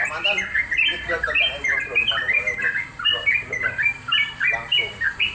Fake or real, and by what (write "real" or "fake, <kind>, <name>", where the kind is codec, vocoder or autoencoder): fake, vocoder, BigVGAN v2